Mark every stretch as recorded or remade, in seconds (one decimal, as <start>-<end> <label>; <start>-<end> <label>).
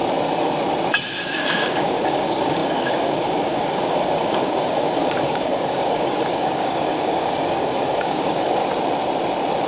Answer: 0.0-1.2 recorded; 1.2-8.6 remade; 8.6-9.7 recorded